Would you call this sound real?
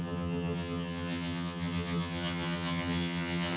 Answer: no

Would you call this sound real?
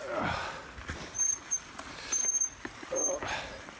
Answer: yes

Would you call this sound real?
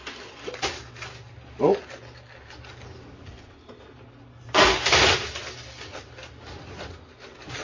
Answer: yes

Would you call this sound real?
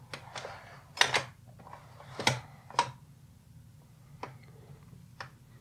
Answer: yes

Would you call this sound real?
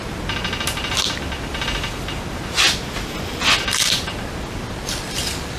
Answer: yes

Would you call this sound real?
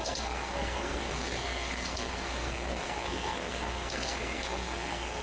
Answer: no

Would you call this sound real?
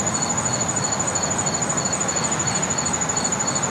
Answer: yes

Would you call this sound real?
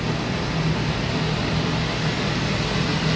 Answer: yes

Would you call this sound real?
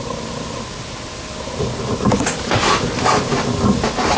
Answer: yes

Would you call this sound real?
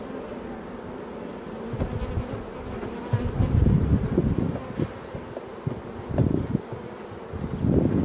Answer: yes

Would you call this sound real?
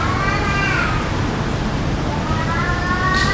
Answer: yes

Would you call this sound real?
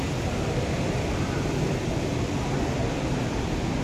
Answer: yes